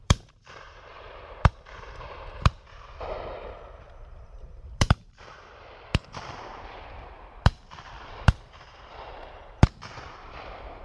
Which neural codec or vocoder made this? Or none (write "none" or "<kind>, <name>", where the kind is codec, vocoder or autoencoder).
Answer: vocoder, BigVGAN v2